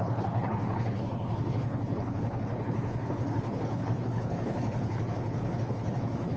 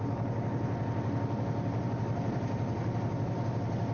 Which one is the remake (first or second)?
first